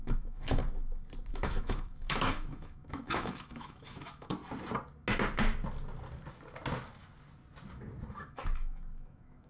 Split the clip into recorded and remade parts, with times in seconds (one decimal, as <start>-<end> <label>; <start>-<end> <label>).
0.0-0.6 remade; 0.6-1.3 recorded; 1.3-4.4 remade; 4.4-8.1 recorded; 8.1-9.5 remade

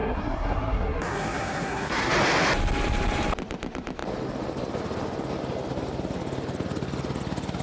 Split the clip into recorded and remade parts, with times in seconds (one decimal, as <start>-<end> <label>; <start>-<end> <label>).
0.0-2.1 remade; 2.1-7.6 recorded

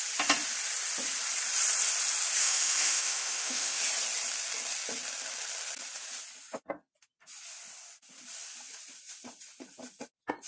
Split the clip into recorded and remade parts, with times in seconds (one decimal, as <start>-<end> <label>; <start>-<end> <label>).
0.0-2.4 recorded; 2.4-3.8 remade; 3.8-10.5 recorded

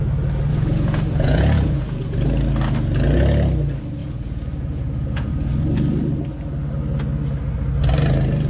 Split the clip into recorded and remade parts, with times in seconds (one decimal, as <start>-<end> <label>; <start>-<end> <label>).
0.0-0.5 recorded; 0.5-2.0 remade; 2.0-4.0 recorded; 4.0-5.3 remade; 5.3-8.5 recorded